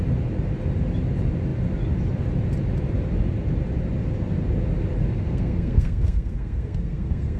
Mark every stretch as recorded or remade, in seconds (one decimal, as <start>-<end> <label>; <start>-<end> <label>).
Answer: 0.0-5.1 recorded; 5.1-7.4 remade